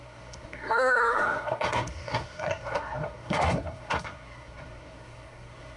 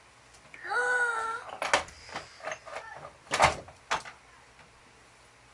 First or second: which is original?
second